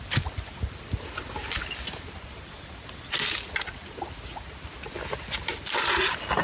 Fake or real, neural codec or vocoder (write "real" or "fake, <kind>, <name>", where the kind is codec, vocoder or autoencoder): real